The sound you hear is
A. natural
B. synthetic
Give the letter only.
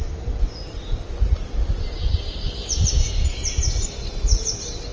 A